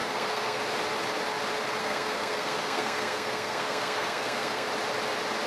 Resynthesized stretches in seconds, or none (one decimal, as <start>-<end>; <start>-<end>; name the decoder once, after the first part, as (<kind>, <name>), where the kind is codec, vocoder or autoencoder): 0.0-0.6 (codec, SNAC); 1.8-4.7